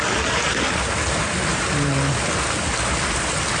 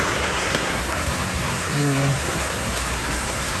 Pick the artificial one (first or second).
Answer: second